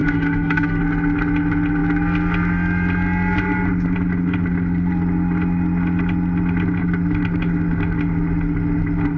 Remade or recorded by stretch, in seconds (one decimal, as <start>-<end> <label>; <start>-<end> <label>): 0.0-0.8 remade; 0.8-9.2 recorded